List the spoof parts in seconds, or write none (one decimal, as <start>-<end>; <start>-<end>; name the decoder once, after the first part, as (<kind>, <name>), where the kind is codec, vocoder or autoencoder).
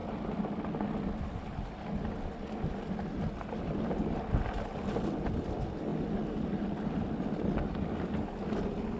none